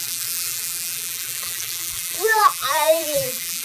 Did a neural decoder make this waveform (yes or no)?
yes